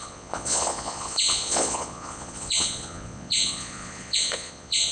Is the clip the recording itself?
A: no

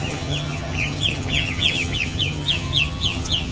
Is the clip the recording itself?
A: no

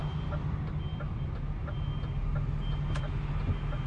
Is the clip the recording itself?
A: yes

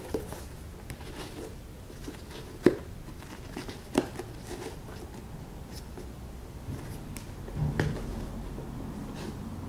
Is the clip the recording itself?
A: yes